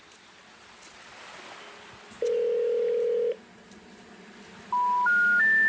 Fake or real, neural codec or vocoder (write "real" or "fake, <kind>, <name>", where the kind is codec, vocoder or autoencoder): real